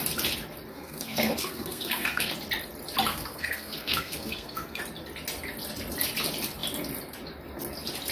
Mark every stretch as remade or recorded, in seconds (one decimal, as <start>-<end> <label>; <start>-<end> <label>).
0.0-0.7 recorded; 0.7-2.3 remade; 2.3-3.1 recorded; 3.1-4.8 remade; 4.8-8.1 recorded